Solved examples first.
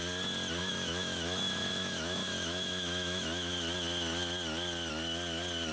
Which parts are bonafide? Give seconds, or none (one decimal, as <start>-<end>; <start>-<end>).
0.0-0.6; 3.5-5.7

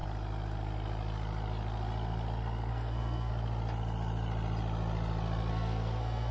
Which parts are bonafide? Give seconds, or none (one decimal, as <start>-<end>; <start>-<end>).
0.0-2.7; 3.3-5.5

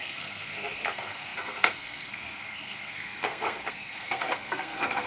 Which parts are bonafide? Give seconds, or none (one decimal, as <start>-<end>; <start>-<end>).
none

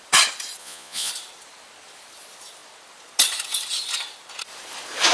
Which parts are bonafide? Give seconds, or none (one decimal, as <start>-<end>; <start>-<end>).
0.0-0.6; 1.1-5.1

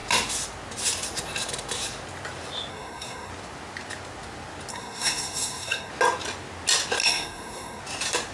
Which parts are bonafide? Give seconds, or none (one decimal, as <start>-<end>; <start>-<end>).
0.0-2.7; 3.3-4.7; 5.9-7.0; 7.8-8.3

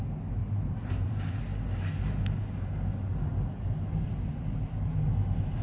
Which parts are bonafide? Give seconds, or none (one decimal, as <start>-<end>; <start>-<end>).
0.0-0.4; 1.3-5.6